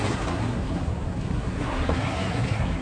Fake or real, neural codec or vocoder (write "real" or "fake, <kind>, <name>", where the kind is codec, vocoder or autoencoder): fake, codec, SNAC